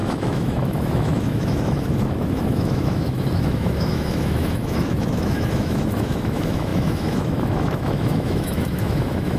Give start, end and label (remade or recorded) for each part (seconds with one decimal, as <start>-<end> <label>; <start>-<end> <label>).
0.0-9.4 remade